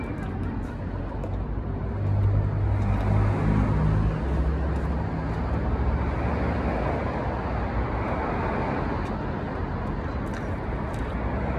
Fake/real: real